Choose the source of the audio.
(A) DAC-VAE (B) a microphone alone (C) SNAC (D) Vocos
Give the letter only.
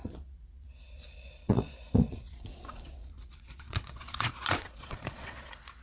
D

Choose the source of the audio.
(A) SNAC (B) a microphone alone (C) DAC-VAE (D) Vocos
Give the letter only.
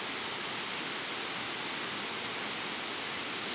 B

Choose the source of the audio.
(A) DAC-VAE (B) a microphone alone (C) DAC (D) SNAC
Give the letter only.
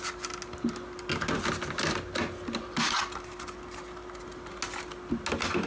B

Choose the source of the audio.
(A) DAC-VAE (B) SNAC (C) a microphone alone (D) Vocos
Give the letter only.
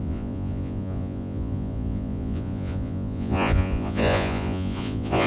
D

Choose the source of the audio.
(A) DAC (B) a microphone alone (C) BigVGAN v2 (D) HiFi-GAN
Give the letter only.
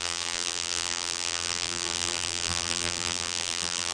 C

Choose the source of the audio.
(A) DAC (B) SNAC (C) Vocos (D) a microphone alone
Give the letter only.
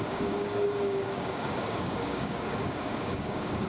A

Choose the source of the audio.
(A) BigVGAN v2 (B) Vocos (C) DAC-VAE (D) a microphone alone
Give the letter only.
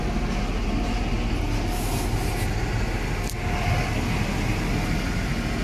D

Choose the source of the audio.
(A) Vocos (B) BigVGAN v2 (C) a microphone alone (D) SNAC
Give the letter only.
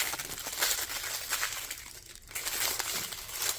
C